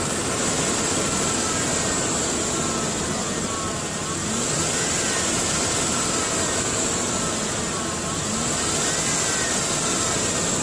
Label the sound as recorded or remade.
recorded